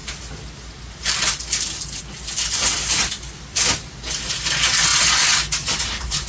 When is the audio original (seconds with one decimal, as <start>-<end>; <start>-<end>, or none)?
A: 0.0-6.3